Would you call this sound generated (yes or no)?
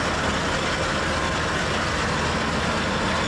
no